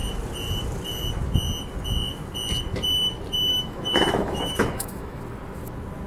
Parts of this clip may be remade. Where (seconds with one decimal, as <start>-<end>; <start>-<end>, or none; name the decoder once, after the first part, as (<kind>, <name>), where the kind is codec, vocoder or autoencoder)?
3.5-5.2 (autoencoder, DAC-VAE)